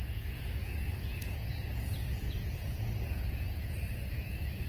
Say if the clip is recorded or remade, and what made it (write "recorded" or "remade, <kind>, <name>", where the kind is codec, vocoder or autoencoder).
remade, vocoder, Vocos